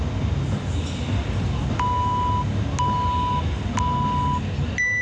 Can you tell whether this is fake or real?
real